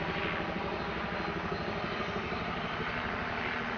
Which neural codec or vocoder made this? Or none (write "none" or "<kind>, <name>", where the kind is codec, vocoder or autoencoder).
none